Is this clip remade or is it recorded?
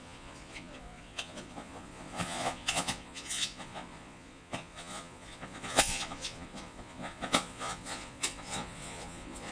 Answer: remade